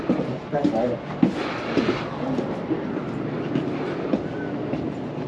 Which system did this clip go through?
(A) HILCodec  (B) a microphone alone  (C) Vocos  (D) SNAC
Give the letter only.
B